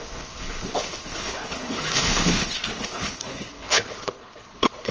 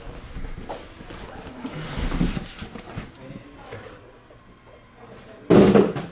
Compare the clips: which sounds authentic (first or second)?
second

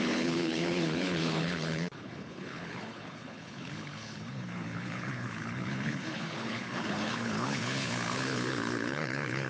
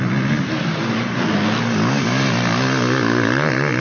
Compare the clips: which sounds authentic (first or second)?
second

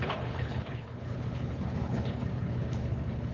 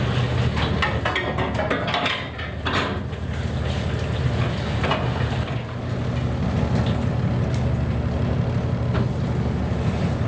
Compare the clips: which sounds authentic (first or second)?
second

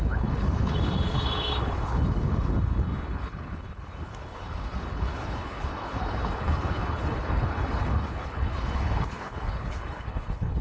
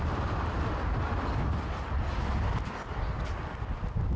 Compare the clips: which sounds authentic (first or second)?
second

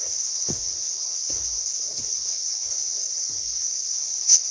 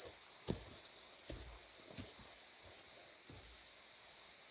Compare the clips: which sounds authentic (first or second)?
second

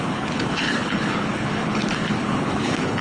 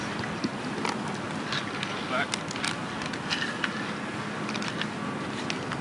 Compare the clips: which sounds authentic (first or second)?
second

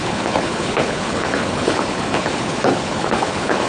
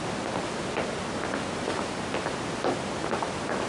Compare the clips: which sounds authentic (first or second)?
second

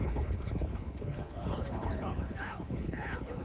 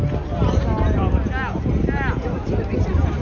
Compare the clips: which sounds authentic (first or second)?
second